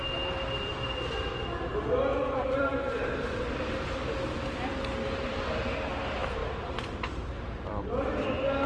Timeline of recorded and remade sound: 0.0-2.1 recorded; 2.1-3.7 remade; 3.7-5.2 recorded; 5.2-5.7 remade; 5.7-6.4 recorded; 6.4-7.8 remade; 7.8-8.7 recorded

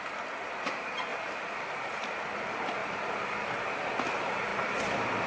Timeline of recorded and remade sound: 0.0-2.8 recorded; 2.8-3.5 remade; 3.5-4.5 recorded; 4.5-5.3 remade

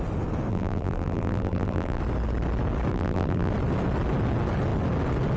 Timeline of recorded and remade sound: 0.0-0.5 recorded; 0.5-2.0 remade; 2.0-2.9 recorded; 2.9-3.5 remade; 3.5-5.4 recorded

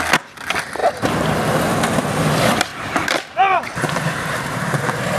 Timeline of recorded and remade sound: 0.0-0.8 recorded; 0.8-2.3 remade; 2.3-2.7 recorded; 2.7-5.2 remade

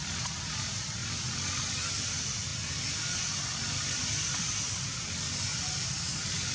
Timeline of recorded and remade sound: 0.0-6.5 recorded

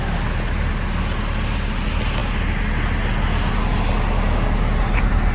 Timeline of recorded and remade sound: 0.0-5.3 recorded

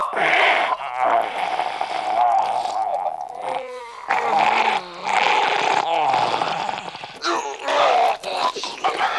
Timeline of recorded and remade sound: 0.0-2.9 recorded; 2.9-3.8 remade; 3.8-5.0 recorded; 5.0-5.6 remade; 5.6-9.2 recorded

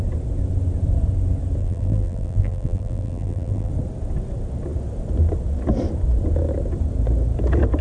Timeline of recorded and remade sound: 0.0-1.6 recorded; 1.6-3.7 remade; 3.7-7.8 recorded